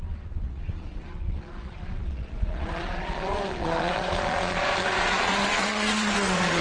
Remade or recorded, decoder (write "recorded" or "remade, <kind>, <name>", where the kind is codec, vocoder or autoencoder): remade, vocoder, Vocos